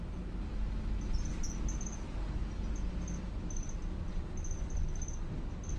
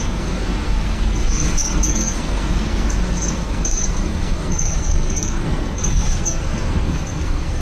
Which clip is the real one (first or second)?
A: first